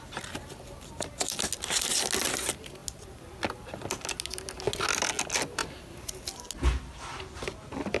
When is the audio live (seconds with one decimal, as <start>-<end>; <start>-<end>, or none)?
0.0-8.0

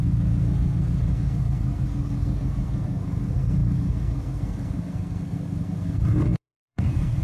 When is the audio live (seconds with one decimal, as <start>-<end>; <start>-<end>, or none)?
none

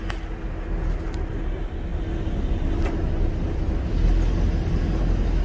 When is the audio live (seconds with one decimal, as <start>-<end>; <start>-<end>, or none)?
0.0-5.4